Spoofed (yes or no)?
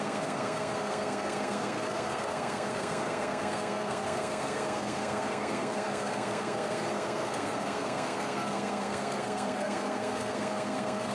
yes